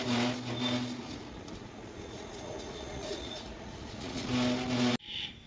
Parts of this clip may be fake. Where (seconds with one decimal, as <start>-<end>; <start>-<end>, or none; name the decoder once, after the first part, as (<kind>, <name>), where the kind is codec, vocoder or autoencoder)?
1.0-4.3 (vocoder, Vocos)